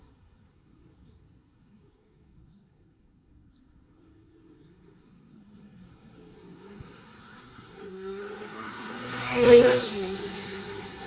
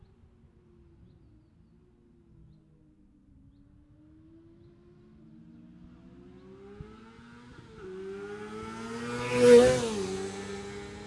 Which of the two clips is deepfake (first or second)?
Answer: first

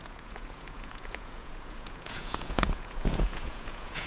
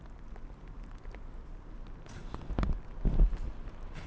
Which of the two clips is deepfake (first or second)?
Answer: first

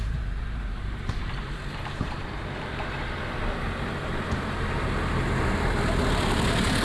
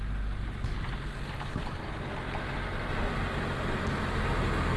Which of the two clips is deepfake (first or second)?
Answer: first